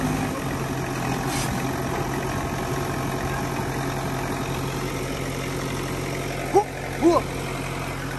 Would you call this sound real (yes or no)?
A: yes